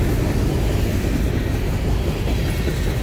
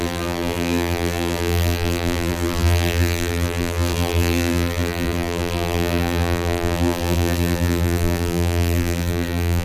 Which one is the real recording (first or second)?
first